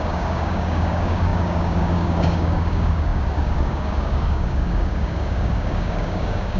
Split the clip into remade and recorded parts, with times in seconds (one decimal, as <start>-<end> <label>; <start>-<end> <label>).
0.0-6.6 remade